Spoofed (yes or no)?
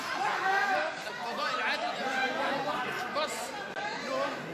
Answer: no